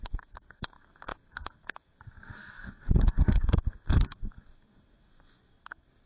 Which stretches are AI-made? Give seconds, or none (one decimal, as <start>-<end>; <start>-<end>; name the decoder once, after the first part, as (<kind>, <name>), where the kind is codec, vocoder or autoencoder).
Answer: 0.0-6.1 (codec, SNAC)